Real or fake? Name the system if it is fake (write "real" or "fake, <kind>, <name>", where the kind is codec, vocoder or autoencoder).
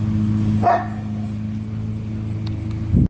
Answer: real